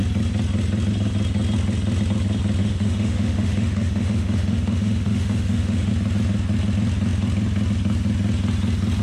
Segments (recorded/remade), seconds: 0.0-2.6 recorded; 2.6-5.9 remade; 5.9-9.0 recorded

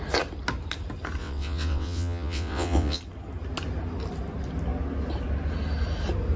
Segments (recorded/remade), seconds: 0.0-1.2 recorded; 1.2-3.0 remade; 3.0-6.4 recorded

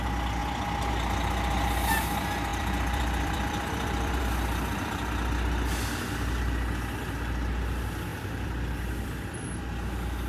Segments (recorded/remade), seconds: 0.0-2.5 recorded; 2.5-4.2 remade; 4.2-8.1 recorded; 8.1-9.6 remade; 9.6-10.3 recorded